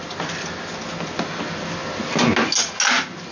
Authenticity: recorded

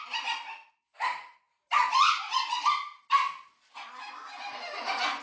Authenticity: recorded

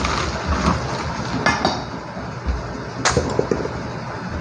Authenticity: recorded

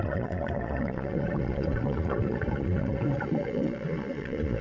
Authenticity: remade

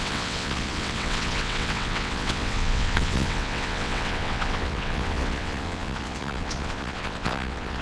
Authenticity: remade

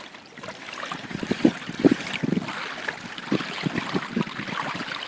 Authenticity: recorded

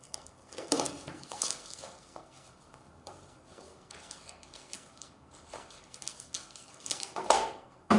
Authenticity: remade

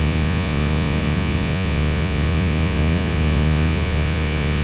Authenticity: remade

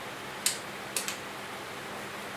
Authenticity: recorded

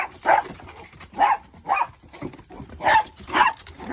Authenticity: remade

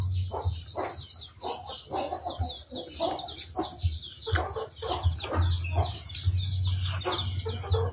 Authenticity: recorded